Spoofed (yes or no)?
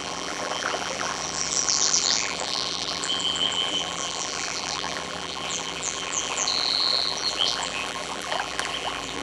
yes